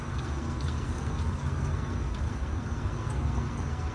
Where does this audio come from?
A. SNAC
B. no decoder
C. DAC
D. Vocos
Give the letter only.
A